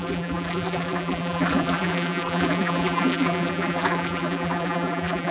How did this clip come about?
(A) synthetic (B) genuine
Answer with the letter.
A